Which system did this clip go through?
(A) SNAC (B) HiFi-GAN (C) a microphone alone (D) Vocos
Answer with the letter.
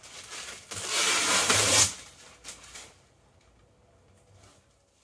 C